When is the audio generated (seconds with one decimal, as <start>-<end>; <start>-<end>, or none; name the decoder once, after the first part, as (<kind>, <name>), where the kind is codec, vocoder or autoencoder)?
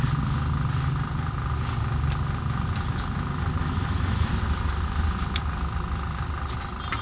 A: 3.6-4.3 (autoencoder, DAC-VAE)